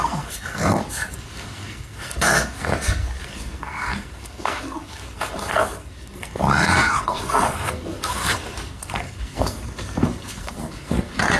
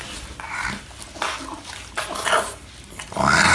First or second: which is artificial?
first